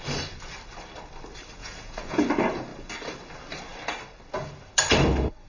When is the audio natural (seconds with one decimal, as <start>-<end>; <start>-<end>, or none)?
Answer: 0.0-1.6; 2.2-5.5